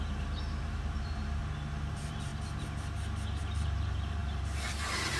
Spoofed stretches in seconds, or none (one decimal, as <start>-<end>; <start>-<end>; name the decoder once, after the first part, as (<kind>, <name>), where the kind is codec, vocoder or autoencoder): 0.0-1.4 (vocoder, BigVGAN v2); 1.9-2.3; 3.4-5.2